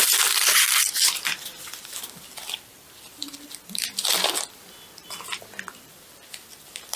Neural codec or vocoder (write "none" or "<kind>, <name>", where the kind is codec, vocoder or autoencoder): vocoder, BigVGAN v2